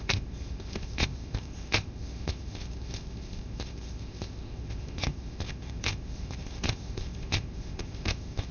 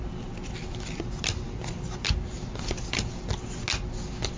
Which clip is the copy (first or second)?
first